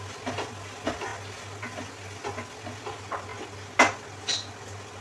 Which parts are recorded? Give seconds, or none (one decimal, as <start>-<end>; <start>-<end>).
0.0-5.0